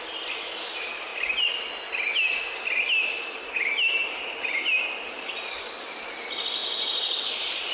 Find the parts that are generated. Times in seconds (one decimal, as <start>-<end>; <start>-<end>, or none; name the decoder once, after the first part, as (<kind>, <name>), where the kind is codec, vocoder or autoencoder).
0.0-1.1 (vocoder, BigVGAN v2); 4.9-6.6; 7.3-7.7